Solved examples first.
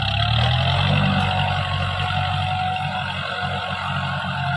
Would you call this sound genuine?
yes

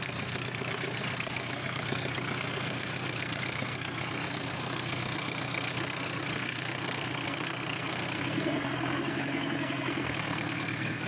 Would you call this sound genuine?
no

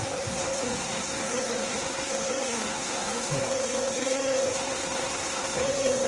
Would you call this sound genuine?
no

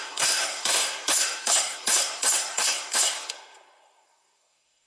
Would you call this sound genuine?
no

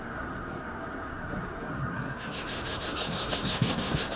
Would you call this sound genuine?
no